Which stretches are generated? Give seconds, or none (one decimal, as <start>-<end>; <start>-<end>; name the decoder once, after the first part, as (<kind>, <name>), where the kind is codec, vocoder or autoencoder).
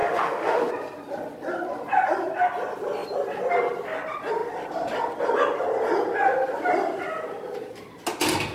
0.0-0.7 (autoencoder, DAC-VAE)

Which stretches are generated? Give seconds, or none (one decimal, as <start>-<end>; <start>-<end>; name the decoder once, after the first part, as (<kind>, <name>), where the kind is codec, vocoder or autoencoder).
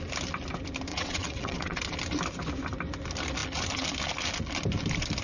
0.9-1.8 (vocoder, WaveNeXt)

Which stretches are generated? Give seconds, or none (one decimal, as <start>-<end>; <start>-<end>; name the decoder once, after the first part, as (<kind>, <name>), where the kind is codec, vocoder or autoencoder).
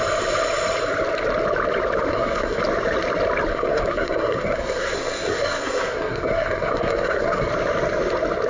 2.1-2.6 (codec, SNAC); 3.5-7.5